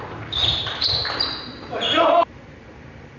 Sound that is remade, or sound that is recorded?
remade